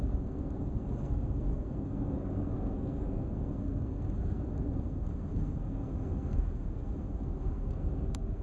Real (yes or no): no